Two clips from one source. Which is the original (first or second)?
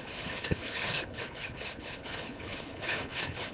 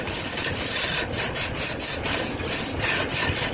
second